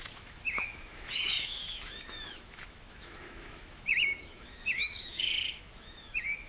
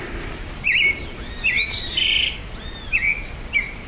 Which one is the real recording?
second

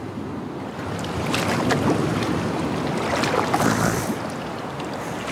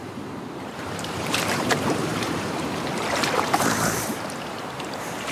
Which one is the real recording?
first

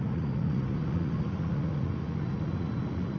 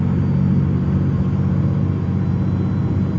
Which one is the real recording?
second